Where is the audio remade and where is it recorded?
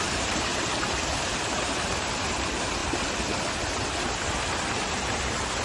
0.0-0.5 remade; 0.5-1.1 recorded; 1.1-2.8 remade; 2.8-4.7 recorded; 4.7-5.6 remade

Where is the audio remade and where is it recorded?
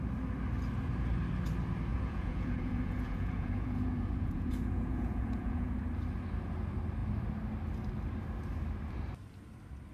0.0-1.9 recorded; 1.9-5.8 remade; 5.8-9.9 recorded